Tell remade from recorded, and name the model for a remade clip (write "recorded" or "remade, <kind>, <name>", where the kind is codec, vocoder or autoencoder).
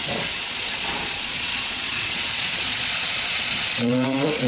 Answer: remade, vocoder, Vocos